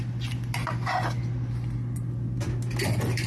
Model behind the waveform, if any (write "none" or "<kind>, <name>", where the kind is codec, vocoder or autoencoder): none